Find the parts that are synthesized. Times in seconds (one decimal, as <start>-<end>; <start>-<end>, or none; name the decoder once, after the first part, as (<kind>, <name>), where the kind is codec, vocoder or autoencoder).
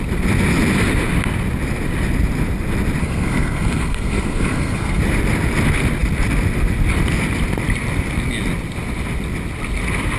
3.0-5.0 (codec, SNAC)